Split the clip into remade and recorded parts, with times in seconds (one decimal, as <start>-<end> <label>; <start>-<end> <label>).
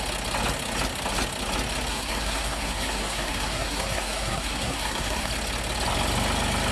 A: 0.0-1.9 recorded; 1.9-5.3 remade; 5.3-6.7 recorded